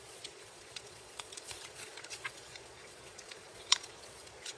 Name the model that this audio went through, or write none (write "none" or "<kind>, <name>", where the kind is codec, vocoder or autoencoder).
vocoder, Vocos